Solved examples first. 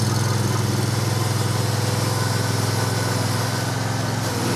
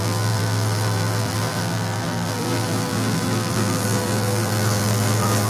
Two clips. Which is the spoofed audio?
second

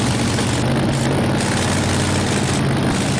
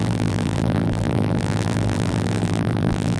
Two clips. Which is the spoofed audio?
second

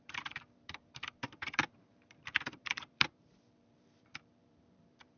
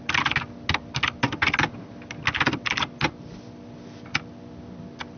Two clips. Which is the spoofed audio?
first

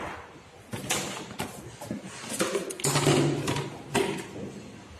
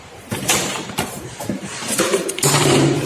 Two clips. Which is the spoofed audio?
second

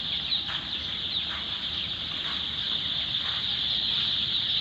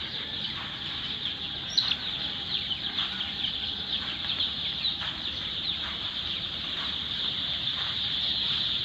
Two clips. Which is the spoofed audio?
second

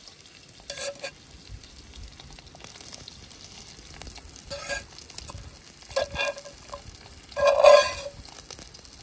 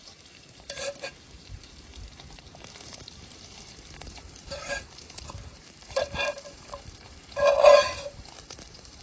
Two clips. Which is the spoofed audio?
second